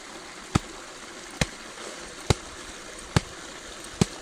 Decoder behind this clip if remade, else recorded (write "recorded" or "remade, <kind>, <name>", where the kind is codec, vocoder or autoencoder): recorded